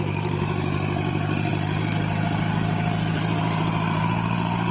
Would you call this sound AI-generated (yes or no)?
yes